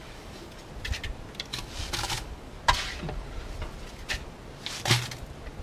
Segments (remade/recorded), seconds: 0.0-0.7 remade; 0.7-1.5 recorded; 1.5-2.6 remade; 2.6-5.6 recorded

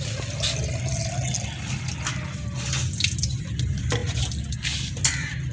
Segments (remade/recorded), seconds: 0.0-5.5 recorded

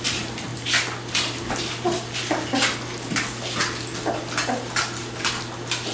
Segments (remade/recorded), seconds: 0.0-5.9 recorded

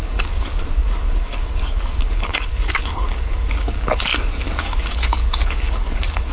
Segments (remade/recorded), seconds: 0.0-6.3 remade

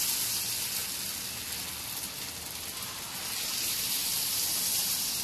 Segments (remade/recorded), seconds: 0.0-5.2 recorded